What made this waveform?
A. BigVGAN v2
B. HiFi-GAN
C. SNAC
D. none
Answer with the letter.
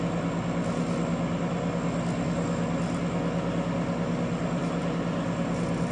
D